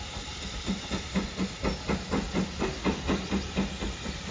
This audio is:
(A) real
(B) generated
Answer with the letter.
A